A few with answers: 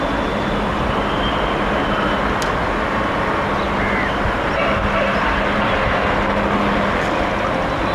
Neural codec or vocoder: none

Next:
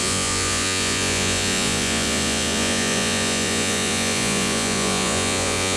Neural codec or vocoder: vocoder, Vocos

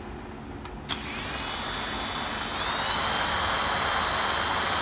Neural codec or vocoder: none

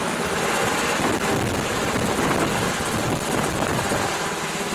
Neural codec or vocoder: none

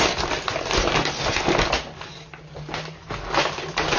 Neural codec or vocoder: none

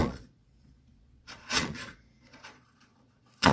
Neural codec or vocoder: vocoder, Vocos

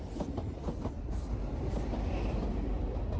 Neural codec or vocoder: none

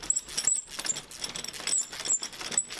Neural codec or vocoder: none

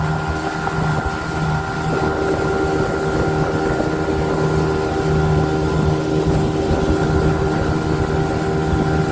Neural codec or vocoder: none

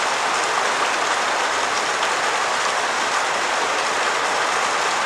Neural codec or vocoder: none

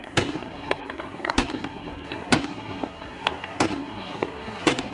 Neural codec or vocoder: codec, SNAC